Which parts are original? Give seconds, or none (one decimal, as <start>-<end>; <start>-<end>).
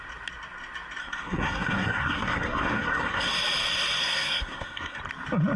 0.0-1.0; 3.3-4.0; 5.0-5.6